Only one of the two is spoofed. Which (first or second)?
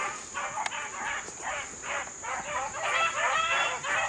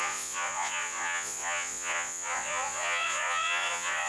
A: second